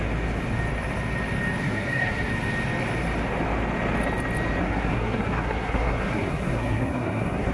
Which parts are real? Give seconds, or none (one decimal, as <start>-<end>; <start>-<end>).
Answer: 0.0-1.6; 2.3-4.6